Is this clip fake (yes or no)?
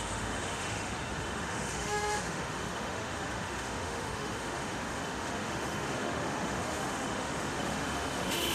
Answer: yes